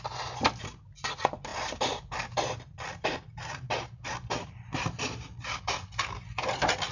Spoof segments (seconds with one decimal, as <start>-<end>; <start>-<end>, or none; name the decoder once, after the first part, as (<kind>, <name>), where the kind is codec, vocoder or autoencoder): 1.5-5.6 (vocoder, BigVGAN v2)